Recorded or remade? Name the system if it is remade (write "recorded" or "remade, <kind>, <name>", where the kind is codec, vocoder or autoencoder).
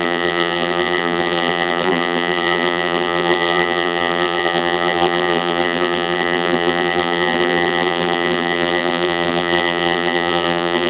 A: remade, vocoder, BigVGAN v2